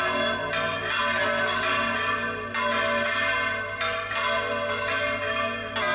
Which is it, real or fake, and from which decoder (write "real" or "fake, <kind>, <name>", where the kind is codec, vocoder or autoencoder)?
real